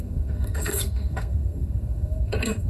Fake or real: fake